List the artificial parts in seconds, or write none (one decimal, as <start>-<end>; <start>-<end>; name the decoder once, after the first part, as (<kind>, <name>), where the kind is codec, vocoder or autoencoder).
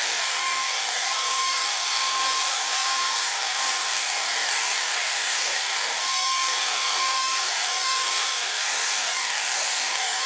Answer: 0.0-10.3 (codec, DAC)